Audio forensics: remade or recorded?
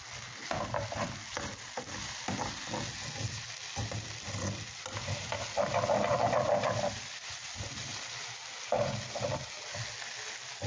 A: recorded